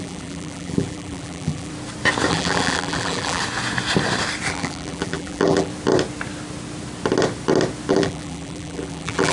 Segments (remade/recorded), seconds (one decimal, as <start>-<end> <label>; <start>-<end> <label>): 0.0-1.7 remade; 1.7-2.3 recorded; 2.3-3.4 remade; 3.4-4.5 recorded; 4.5-5.7 remade; 5.7-7.9 recorded; 7.9-9.3 remade